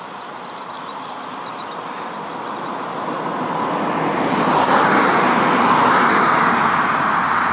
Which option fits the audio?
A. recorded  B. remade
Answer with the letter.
A